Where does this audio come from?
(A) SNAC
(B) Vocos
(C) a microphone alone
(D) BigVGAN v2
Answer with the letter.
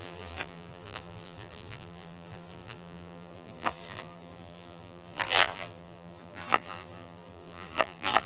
D